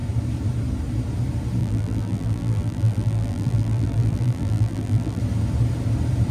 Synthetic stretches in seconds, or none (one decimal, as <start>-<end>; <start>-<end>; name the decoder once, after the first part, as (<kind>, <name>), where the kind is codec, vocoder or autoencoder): 1.6-5.2 (vocoder, BigVGAN v2)